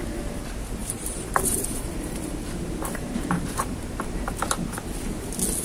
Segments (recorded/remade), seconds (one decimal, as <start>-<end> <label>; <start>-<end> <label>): 0.0-0.8 recorded; 0.8-4.2 remade; 4.2-5.6 recorded